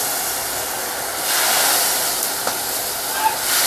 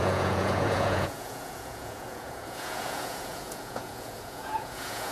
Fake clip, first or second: second